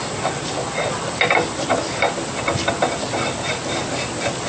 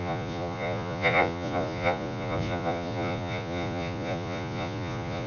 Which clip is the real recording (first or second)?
first